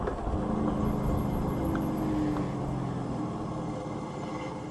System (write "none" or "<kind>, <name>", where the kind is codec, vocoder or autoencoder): none